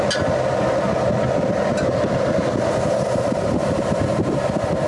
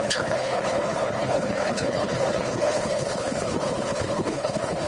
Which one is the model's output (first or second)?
second